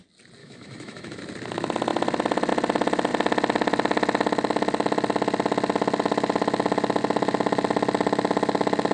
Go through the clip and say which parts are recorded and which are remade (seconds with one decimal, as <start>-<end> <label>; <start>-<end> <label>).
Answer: 0.0-0.4 recorded; 0.4-1.2 remade; 1.2-8.9 recorded